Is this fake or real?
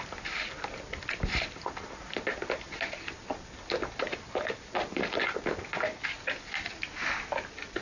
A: real